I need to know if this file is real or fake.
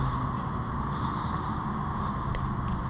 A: real